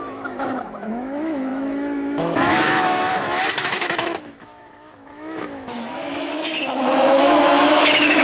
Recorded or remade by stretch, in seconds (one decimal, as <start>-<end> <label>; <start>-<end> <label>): 0.0-8.2 remade